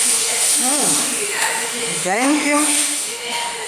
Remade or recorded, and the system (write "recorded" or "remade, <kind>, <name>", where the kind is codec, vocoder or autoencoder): remade, autoencoder, DAC-VAE